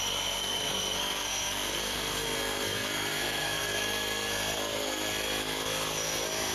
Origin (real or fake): fake